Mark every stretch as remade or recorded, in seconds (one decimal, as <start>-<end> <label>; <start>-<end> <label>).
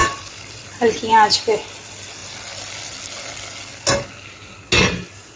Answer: 0.0-0.9 remade; 0.9-5.4 recorded